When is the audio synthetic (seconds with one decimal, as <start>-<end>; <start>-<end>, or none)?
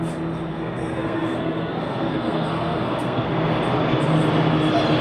0.5-3.3